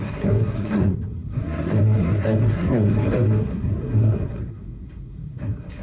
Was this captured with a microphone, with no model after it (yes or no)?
no